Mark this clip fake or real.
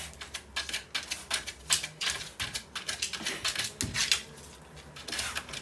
real